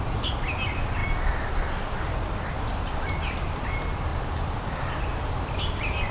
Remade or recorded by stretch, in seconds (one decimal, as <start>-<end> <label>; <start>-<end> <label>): 0.0-6.1 recorded